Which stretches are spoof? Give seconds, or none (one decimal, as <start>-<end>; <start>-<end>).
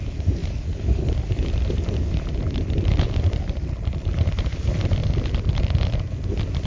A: 0.4-4.4; 5.0-6.1